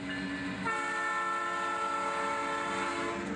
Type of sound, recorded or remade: recorded